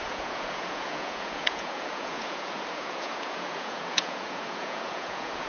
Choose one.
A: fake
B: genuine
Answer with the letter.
A